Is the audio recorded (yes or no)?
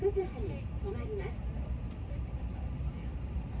no